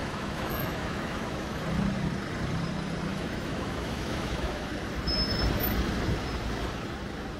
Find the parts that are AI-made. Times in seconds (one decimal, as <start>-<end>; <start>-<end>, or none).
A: 0.0-1.6; 3.1-4.7